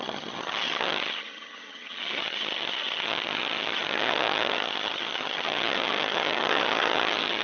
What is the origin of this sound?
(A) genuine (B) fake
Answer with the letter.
B